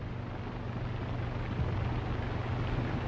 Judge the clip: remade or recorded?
recorded